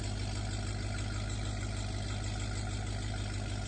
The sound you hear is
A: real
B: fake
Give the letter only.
A